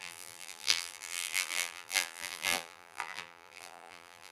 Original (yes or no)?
no